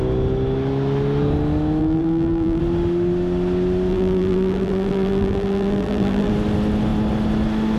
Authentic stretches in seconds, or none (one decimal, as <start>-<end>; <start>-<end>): 0.0-1.8; 2.6-3.9; 6.3-7.8